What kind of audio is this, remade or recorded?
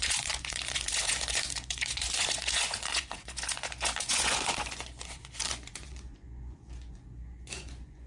remade